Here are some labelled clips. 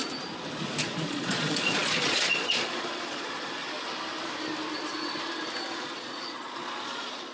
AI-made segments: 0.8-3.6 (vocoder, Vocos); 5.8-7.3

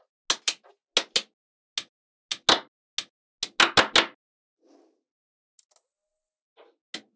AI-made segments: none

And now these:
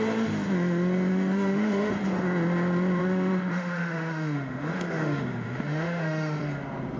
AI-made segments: 1.1-1.9 (autoencoder, DAC-VAE); 3.0-6.4

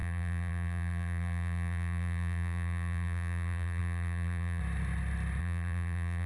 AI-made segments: 0.0-4.6 (vocoder, BigVGAN v2); 5.4-6.3

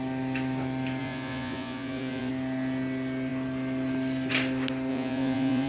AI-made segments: 1.0-2.3 (vocoder, Vocos); 4.9-5.7

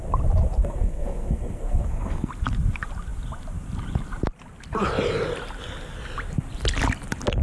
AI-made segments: 0.6-2.3 (codec, SNAC)

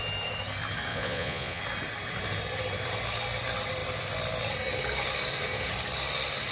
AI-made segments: 0.9-1.6 (vocoder, Vocos)